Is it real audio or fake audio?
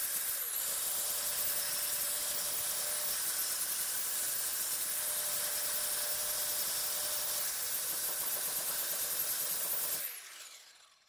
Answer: real